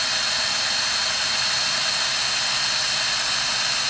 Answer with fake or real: real